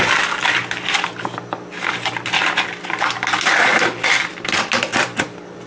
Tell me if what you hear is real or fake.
real